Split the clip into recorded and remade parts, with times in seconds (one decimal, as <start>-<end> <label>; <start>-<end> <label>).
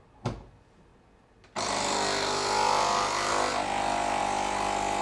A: 0.0-5.0 recorded